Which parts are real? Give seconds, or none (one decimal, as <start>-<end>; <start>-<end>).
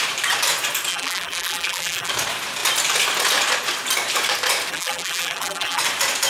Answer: 0.0-0.9; 2.1-4.7; 5.8-6.3